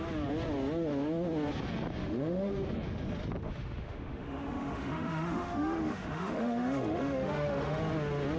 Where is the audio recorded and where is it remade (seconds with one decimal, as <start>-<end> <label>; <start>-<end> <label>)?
0.0-2.0 recorded; 2.0-2.5 remade; 2.5-3.4 recorded; 3.4-7.8 remade; 7.8-8.4 recorded

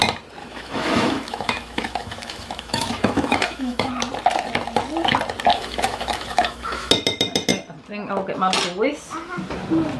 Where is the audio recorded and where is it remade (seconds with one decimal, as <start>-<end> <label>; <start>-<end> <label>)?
0.0-0.4 recorded; 0.4-3.9 remade; 3.9-5.5 recorded; 5.5-6.9 remade; 6.9-10.0 recorded

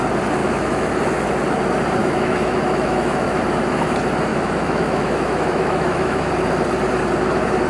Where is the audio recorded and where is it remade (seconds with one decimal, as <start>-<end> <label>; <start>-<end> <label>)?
0.0-0.4 recorded; 0.4-0.9 remade; 0.9-2.0 recorded; 2.0-3.4 remade; 3.4-4.3 recorded; 4.3-6.3 remade; 6.3-7.7 recorded

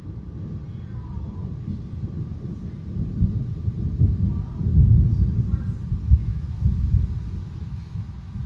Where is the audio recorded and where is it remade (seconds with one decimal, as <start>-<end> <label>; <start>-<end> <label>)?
0.0-6.2 recorded; 6.2-6.8 remade; 6.8-7.4 recorded; 7.4-8.5 remade

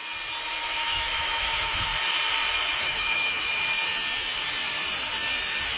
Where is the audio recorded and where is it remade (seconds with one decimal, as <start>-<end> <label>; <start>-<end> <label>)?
0.0-0.6 recorded; 0.6-1.9 remade; 1.9-2.8 recorded; 2.8-3.6 remade; 3.6-5.8 recorded

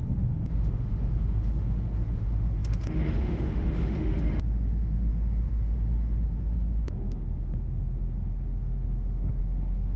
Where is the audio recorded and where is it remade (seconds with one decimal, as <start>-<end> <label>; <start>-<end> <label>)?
0.0-10.0 remade

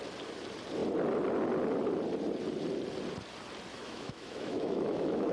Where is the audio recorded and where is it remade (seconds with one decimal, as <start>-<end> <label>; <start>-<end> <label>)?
0.0-3.7 recorded; 3.7-5.3 remade